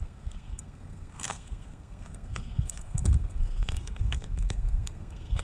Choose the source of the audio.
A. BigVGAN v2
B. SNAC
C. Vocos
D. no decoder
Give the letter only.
B